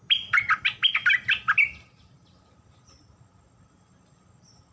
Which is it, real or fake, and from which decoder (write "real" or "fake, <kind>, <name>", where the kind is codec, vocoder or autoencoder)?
real